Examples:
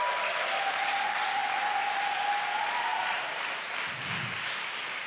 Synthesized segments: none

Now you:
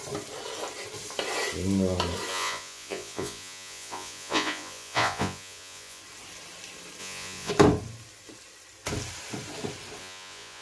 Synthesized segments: 2.3-6.0 (vocoder, Vocos); 7.0-7.5; 10.0-10.6

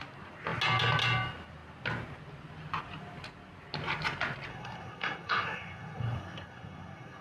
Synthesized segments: 4.5-7.2 (codec, SNAC)

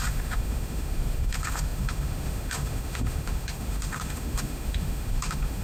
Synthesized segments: 0.0-5.6 (autoencoder, DAC-VAE)

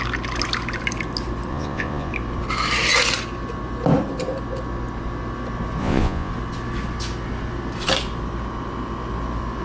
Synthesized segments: 1.5-2.1 (vocoder, Vocos); 5.8-6.3

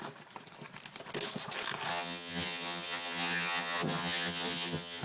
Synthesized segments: 1.9-5.0 (vocoder, HiFi-GAN)